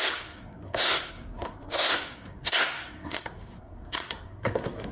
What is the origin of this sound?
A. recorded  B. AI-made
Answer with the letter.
B